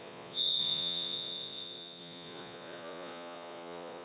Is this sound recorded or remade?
remade